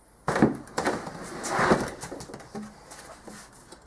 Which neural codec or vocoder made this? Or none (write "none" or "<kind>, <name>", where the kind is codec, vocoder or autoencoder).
none